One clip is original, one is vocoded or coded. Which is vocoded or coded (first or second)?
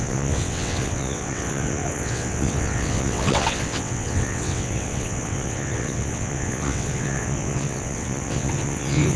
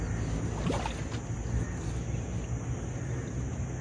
first